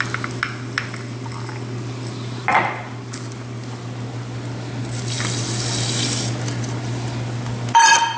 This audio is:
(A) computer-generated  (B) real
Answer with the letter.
B